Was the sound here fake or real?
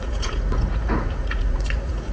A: fake